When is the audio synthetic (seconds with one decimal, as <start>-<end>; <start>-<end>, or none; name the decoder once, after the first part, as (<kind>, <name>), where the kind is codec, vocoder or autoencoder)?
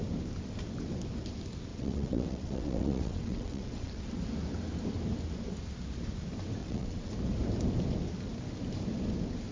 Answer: 1.7-4.0 (vocoder, WaveNeXt); 6.6-7.1